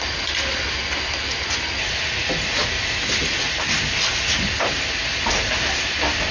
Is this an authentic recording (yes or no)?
yes